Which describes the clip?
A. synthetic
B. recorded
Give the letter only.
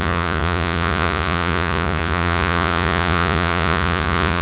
A